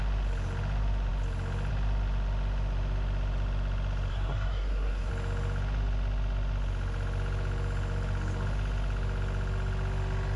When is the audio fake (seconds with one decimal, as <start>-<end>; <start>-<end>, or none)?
4.1-5.1

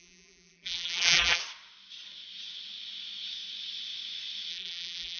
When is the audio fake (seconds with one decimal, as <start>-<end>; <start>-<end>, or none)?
0.0-1.4; 4.5-5.2

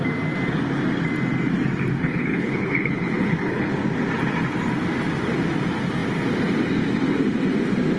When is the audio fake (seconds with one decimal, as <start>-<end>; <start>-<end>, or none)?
2.0-3.7

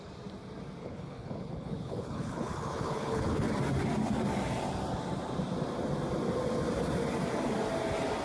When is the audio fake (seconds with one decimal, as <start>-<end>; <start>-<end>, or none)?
0.8-3.5

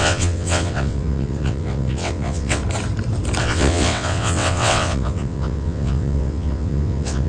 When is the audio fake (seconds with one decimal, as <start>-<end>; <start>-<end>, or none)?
0.0-2.6; 3.4-7.3

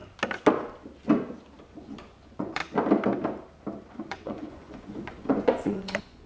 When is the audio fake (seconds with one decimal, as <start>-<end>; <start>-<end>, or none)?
1.7-2.6; 3.9-6.3

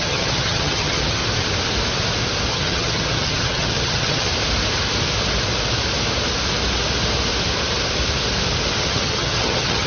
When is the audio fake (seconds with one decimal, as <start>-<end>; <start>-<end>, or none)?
0.0-1.2; 2.5-4.3; 8.8-9.9